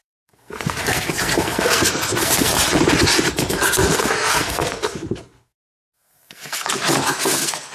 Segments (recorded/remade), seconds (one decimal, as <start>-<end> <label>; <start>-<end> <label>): 0.0-2.5 remade; 2.5-3.3 recorded; 3.3-7.7 remade